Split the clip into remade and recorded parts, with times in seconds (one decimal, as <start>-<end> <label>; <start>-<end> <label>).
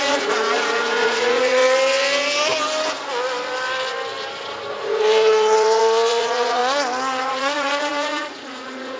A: 0.0-1.6 remade; 1.6-4.7 recorded; 4.7-6.6 remade; 6.6-7.2 recorded; 7.2-9.0 remade